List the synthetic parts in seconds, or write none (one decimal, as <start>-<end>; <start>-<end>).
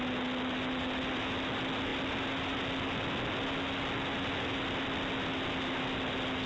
none